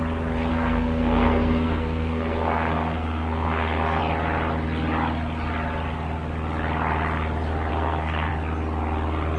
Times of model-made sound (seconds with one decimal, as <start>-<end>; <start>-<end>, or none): 0.5-4.0; 7.7-8.3